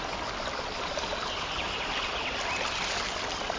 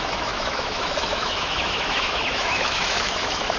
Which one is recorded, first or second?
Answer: first